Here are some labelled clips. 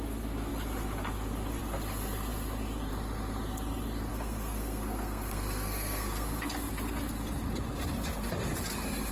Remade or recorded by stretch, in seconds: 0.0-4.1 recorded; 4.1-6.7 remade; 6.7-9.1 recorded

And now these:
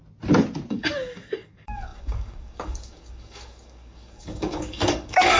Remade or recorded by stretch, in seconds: 0.0-0.7 recorded; 0.7-5.4 remade

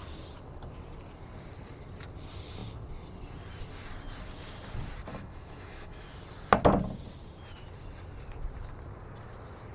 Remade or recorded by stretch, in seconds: 0.0-5.1 recorded; 5.1-6.2 remade; 6.2-9.7 recorded

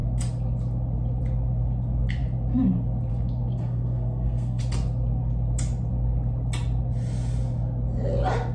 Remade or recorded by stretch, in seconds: 0.0-3.5 recorded; 3.5-4.6 remade; 4.6-8.5 recorded